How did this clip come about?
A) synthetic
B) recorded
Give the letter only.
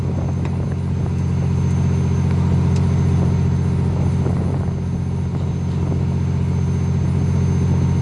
B